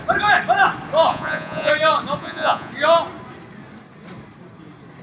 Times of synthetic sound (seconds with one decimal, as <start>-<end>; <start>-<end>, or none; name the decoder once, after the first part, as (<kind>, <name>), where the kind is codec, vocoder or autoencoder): 1.1-1.7 (vocoder, Vocos); 2.2-2.7